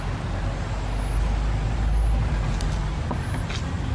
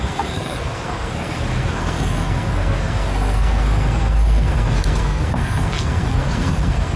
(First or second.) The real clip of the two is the first